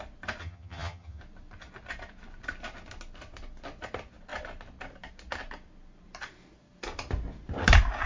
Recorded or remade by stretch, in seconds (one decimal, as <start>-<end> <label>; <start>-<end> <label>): 0.0-0.4 recorded; 0.4-1.2 remade; 1.2-8.1 recorded